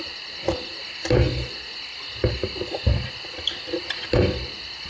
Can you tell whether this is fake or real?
real